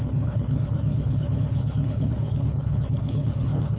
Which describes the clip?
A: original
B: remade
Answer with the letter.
B